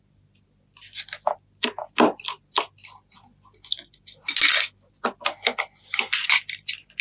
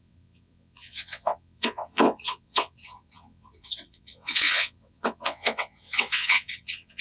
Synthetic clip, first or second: second